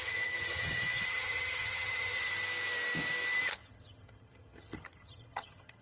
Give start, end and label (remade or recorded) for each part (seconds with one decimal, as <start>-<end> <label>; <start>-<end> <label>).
0.0-2.3 remade; 2.3-3.6 recorded; 3.6-5.8 remade